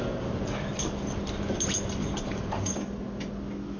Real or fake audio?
real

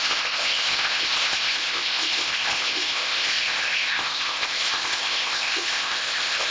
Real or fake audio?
fake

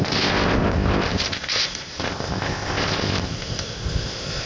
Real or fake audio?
fake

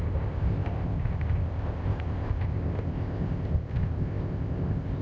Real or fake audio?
fake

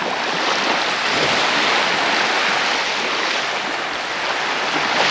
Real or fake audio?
real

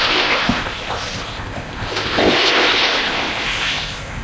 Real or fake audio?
fake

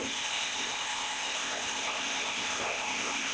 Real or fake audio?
fake